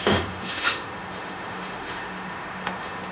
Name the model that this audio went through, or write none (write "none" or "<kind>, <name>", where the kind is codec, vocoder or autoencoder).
autoencoder, DAC-VAE